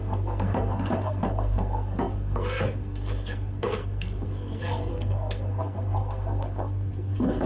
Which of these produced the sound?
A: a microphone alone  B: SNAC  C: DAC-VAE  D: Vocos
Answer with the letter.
B